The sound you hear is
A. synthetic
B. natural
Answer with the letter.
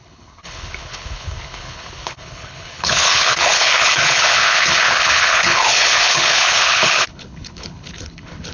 A